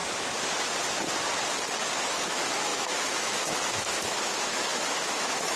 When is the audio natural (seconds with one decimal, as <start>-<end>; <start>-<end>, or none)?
0.0-2.1